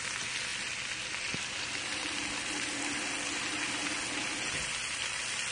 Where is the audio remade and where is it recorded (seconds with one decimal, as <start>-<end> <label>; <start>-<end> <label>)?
0.0-5.5 recorded